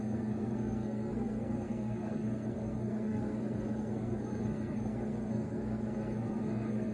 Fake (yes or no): yes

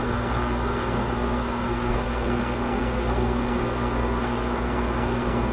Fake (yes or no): yes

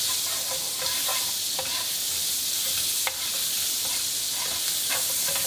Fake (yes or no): no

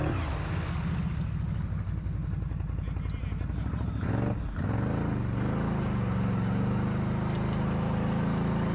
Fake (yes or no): no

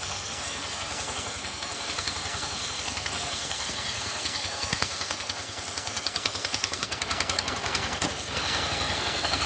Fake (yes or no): yes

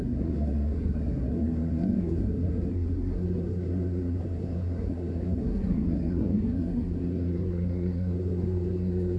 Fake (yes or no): yes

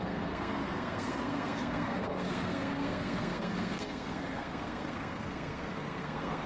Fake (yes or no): yes